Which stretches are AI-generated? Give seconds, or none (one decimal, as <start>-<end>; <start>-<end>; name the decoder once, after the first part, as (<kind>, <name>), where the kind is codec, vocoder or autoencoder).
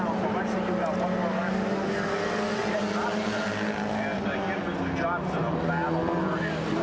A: 1.2-1.8 (codec, DAC)